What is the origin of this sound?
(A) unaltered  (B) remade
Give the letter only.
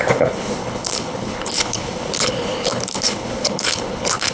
B